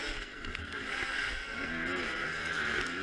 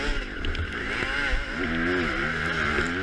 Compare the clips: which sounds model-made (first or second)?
first